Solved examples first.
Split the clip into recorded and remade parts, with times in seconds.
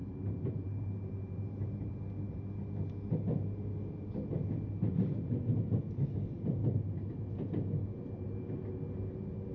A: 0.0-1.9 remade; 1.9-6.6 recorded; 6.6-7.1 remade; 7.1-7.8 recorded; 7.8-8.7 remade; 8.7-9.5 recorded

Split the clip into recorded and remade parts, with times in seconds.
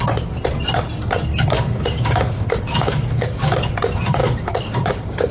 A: 0.0-1.3 recorded; 1.3-3.7 remade; 3.7-4.2 recorded; 4.2-5.3 remade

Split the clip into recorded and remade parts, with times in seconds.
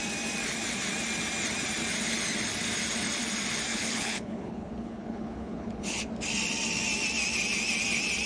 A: 0.0-3.7 recorded; 3.7-6.1 remade; 6.1-8.3 recorded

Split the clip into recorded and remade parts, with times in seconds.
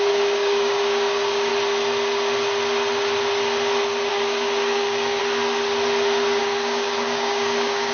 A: 0.0-1.5 remade; 1.5-4.1 recorded; 4.1-5.2 remade; 5.2-6.4 recorded; 6.4-7.9 remade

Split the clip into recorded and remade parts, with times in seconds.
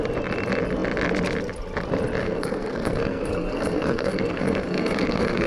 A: 0.0-2.2 recorded; 2.2-5.5 remade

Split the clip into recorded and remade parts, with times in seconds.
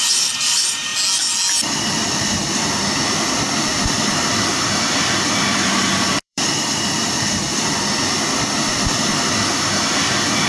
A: 0.0-0.9 remade; 0.9-1.9 recorded; 1.9-10.5 remade